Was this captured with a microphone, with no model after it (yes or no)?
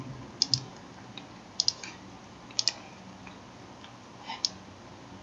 yes